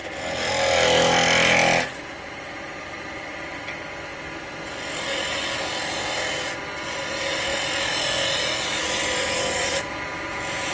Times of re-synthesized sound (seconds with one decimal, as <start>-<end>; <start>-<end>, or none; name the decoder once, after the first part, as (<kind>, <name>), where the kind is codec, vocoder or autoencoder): none